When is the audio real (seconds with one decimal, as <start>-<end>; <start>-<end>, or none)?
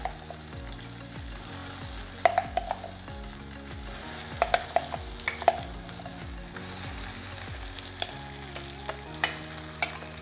0.0-10.2